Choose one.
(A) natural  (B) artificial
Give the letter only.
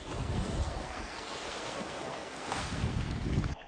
B